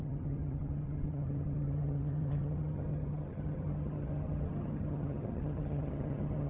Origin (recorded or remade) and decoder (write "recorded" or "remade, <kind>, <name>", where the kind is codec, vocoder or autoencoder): remade, vocoder, HiFi-GAN